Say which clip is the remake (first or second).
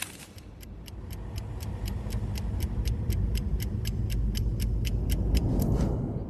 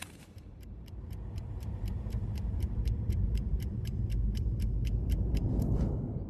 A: second